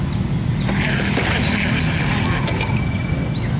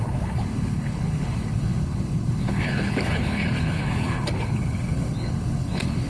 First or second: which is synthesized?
second